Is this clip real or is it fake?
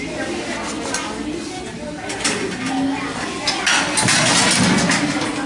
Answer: real